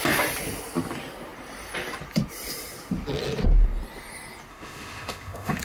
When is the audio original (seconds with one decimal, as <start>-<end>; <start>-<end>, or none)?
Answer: 0.0-4.5